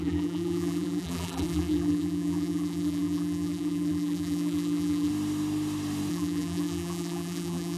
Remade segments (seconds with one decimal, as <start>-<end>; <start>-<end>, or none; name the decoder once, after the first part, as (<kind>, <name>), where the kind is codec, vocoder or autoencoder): 0.0-5.1 (vocoder, BigVGAN v2); 6.1-7.8